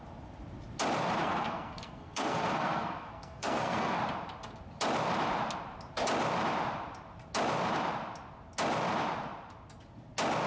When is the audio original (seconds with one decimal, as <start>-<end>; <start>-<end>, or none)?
0.0-1.2; 4.0-10.5